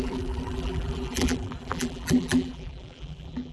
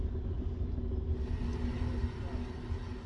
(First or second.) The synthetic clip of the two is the first